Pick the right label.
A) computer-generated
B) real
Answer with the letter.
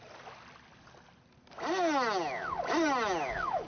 B